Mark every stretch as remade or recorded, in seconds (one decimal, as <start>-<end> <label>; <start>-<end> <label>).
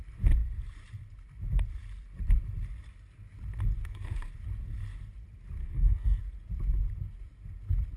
0.0-3.8 recorded; 3.8-4.3 remade; 4.3-5.6 recorded; 5.6-6.2 remade; 6.2-8.0 recorded